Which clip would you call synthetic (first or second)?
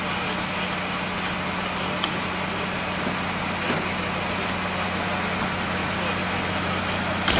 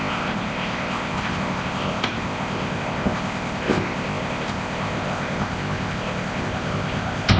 second